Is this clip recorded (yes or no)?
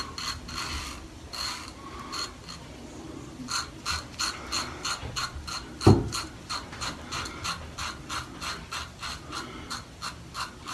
yes